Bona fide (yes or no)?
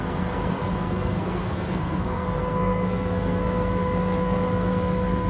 no